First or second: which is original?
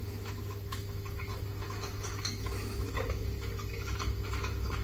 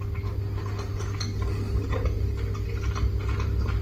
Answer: second